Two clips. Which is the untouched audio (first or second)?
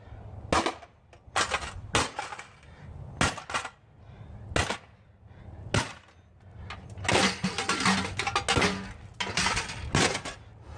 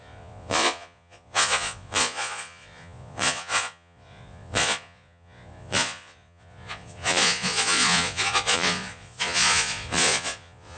first